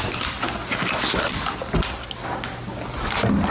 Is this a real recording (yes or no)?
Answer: yes